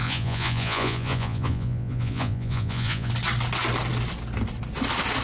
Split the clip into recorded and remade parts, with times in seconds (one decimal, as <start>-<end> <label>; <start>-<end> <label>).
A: 0.0-3.1 remade; 3.1-5.2 recorded